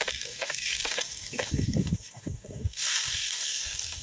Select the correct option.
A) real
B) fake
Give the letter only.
B